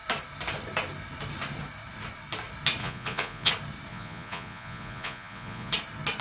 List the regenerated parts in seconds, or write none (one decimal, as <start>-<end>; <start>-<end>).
2.8-3.5; 3.9-5.7